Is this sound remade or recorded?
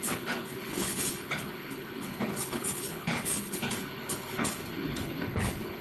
remade